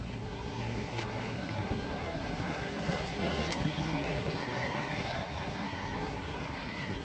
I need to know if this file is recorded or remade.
remade